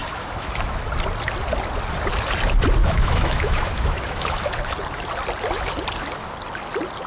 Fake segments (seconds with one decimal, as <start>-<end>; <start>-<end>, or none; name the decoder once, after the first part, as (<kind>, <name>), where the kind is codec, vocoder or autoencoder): 0.0-0.9 (autoencoder, DAC-VAE); 2.8-4.5